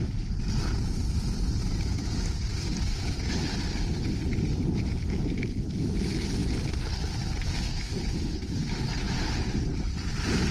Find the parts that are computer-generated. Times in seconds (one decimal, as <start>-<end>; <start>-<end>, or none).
none